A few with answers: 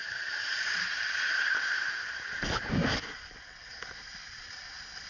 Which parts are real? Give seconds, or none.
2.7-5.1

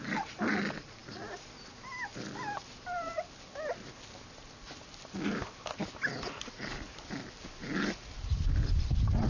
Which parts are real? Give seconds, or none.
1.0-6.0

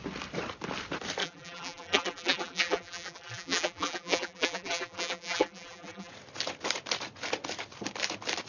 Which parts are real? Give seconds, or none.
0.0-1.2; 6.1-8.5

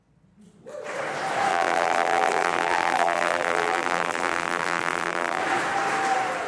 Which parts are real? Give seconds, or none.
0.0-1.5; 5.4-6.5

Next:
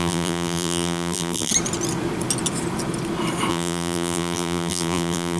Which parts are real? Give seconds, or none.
1.5-3.5

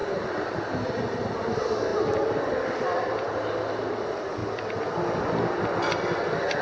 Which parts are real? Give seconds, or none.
0.9-6.6

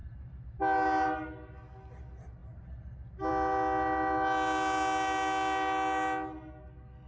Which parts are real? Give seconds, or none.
0.0-7.1

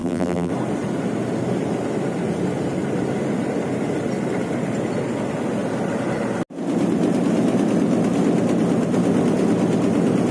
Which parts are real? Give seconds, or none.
0.5-10.3